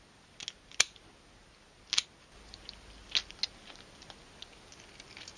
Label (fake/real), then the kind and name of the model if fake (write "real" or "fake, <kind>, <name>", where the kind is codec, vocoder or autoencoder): real